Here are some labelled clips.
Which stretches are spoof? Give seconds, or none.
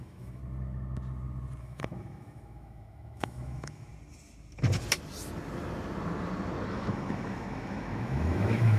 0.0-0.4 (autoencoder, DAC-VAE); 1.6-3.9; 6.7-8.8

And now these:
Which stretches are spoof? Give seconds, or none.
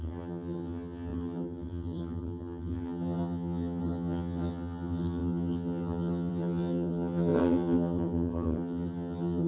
0.0-9.5 (vocoder, HiFi-GAN)